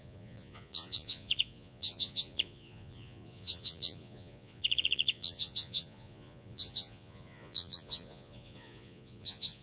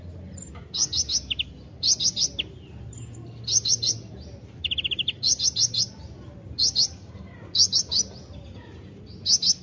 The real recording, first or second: second